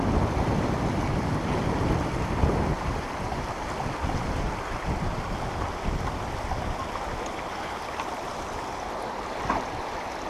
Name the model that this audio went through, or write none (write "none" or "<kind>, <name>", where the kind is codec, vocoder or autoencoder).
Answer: none